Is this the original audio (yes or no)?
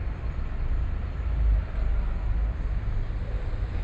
yes